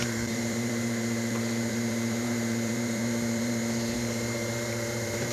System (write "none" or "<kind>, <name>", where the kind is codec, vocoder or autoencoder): vocoder, BigVGAN v2